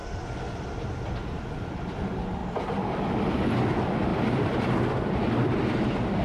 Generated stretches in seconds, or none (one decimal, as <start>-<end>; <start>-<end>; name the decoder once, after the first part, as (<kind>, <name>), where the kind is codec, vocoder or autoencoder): 2.4-3.0 (vocoder, BigVGAN v2); 4.1-5.2

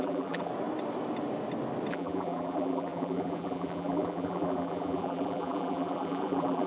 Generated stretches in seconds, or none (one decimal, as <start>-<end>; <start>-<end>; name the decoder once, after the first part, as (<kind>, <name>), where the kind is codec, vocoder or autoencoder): 0.0-0.5 (vocoder, BigVGAN v2); 1.9-6.7

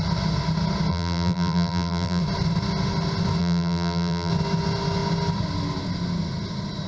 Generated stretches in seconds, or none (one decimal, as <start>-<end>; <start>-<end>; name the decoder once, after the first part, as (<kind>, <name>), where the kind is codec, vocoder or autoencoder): 0.9-2.2 (vocoder, BigVGAN v2); 3.4-4.3

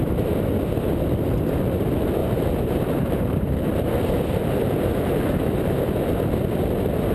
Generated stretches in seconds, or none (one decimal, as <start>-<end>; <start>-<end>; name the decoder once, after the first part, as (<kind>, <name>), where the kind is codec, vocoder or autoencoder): 2.2-6.0 (vocoder, BigVGAN v2)

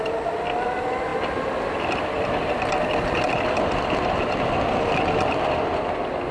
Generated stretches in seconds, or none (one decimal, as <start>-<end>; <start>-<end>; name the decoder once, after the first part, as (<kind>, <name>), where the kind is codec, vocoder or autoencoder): none

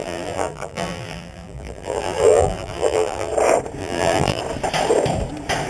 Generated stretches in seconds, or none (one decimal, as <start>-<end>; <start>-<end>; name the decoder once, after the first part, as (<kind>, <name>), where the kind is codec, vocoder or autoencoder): 0.0-3.3 (vocoder, BigVGAN v2); 3.8-4.4

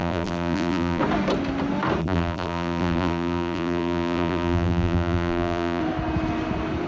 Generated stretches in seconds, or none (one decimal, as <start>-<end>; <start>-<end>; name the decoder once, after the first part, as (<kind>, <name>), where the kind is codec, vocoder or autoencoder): 0.0-1.0 (vocoder, BigVGAN v2); 2.0-5.8